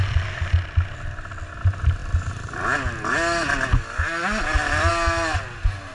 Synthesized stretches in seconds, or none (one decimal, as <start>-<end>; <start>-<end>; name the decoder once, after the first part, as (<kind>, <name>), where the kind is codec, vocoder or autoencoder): none